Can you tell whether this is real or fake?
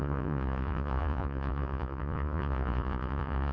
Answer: fake